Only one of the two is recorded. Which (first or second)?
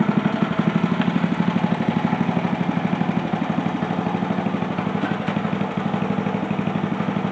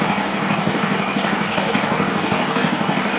first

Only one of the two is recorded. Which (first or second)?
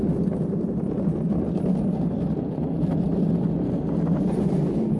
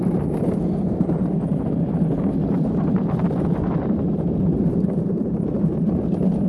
first